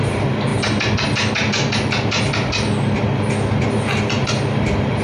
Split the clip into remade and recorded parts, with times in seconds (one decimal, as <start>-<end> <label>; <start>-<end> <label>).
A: 0.0-5.0 recorded